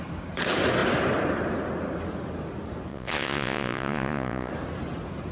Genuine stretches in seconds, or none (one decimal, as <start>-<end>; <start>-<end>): 0.0-2.9; 4.5-5.3

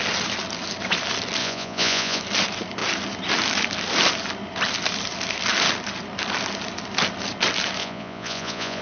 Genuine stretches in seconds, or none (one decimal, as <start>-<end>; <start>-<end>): 0.0-1.4; 2.2-7.8

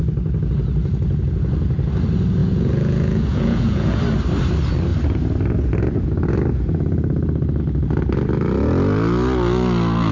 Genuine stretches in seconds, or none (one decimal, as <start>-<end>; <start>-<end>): 0.0-2.4; 4.0-10.1